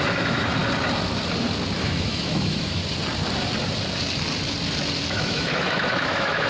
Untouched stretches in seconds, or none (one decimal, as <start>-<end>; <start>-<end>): 0.6-1.8; 2.8-5.1